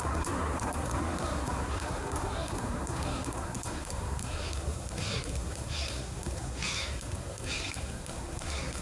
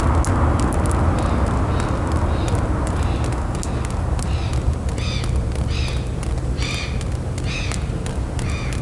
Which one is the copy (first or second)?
first